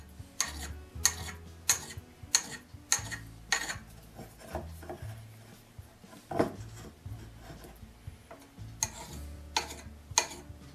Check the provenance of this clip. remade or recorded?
recorded